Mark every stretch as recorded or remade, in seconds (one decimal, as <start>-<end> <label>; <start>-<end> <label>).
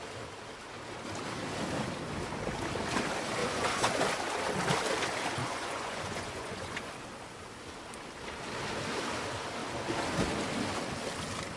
0.0-3.4 recorded; 3.4-4.0 remade; 4.0-5.4 recorded; 5.4-6.9 remade; 6.9-11.6 recorded